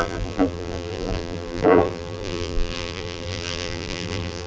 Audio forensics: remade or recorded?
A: remade